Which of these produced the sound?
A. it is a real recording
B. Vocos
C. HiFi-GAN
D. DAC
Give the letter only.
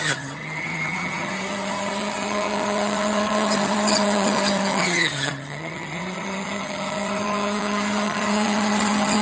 C